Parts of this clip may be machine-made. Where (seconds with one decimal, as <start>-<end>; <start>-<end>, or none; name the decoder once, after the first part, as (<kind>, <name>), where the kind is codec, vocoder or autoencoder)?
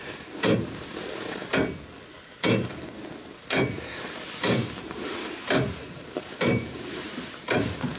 0.0-1.5 (vocoder, BigVGAN v2); 2.4-8.0